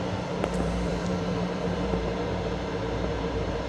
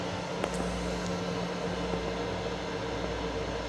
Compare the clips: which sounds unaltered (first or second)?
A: second